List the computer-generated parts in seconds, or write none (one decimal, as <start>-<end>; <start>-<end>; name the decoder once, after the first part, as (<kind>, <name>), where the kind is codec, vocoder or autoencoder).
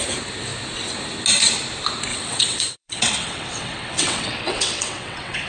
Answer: 2.1-5.5 (vocoder, WaveNeXt)